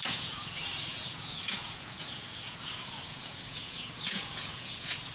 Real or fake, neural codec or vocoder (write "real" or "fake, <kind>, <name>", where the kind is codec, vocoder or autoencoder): fake, vocoder, Vocos